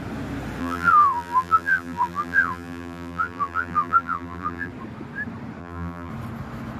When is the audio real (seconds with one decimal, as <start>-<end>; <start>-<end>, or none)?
0.0-0.6; 4.7-5.6; 6.1-6.8